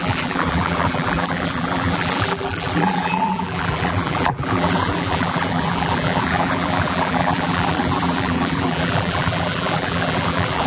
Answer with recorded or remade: remade